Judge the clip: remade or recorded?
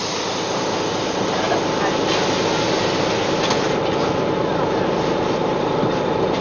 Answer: recorded